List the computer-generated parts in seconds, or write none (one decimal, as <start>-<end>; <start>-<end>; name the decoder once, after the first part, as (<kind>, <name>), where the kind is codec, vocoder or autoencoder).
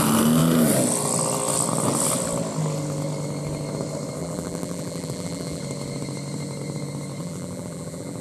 4.2-5.6 (vocoder, BigVGAN v2); 7.2-8.2